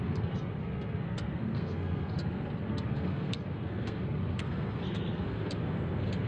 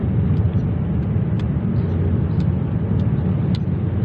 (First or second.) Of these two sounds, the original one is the second